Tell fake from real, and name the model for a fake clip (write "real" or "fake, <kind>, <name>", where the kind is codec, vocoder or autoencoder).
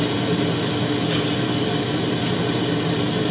real